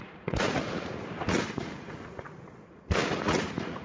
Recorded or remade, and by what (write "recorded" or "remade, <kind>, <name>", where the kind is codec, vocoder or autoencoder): remade, vocoder, Vocos